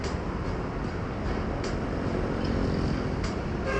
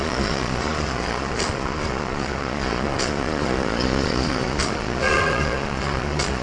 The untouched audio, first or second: first